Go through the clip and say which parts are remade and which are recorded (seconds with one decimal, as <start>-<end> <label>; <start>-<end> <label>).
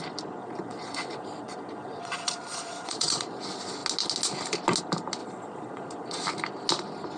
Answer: 0.0-0.4 recorded; 0.4-3.4 remade; 3.4-5.2 recorded; 5.2-6.2 remade; 6.2-7.2 recorded